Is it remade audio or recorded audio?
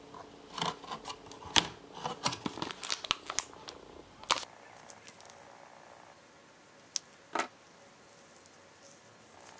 recorded